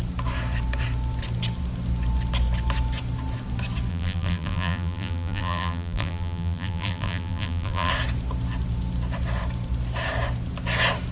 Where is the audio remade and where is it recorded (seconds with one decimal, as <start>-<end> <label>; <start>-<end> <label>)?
0.0-3.9 recorded; 3.9-7.9 remade; 7.9-11.1 recorded